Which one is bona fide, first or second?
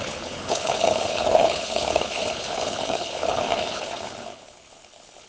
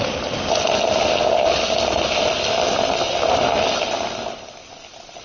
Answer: second